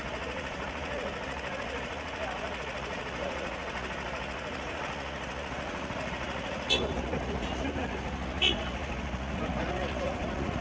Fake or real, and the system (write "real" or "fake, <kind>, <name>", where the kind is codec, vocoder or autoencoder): fake, vocoder, Vocos